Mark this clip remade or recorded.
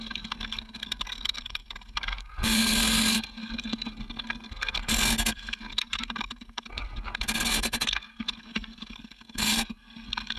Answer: remade